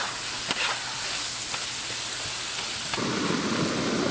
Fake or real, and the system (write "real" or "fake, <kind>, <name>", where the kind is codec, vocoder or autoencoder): real